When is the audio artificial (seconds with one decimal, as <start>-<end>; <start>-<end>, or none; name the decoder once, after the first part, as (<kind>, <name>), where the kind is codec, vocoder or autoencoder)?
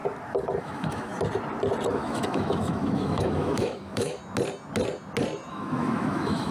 0.6-1.1 (autoencoder, DAC-VAE); 1.9-4.2; 5.5-6.5